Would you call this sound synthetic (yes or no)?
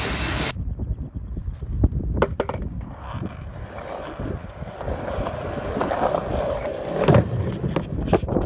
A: no